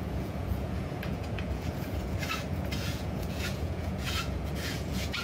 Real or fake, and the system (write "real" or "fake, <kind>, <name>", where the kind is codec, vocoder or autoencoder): fake, vocoder, Vocos